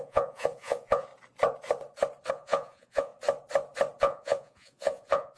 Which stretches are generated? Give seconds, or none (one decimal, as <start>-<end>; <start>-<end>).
0.0-1.1; 2.3-3.1; 4.0-5.4